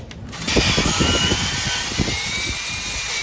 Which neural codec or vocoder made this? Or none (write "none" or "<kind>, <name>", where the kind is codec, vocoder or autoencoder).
none